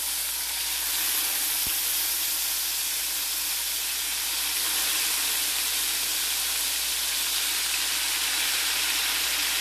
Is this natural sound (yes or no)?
yes